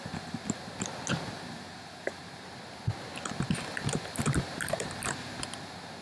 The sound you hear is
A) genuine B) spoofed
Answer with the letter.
A